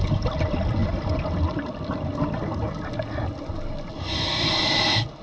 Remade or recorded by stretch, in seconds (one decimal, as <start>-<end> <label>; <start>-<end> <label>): 0.0-5.2 recorded